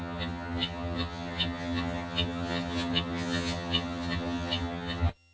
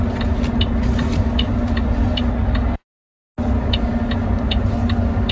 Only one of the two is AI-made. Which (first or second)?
first